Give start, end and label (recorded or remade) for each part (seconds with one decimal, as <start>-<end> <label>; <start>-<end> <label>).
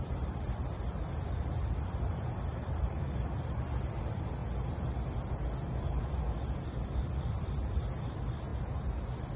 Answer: 0.0-4.4 remade; 4.4-7.2 recorded; 7.2-8.5 remade; 8.5-9.4 recorded